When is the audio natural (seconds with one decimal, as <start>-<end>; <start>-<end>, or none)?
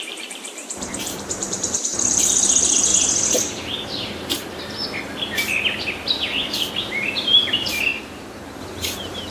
2.9-6.8